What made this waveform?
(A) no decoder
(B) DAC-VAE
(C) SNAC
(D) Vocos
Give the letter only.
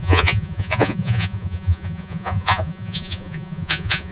D